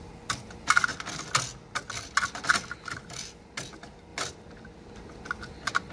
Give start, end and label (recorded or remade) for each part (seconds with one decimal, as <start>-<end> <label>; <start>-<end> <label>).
0.0-5.9 recorded